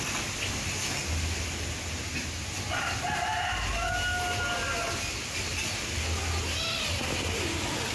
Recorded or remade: recorded